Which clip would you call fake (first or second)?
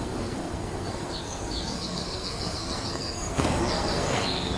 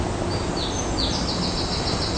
first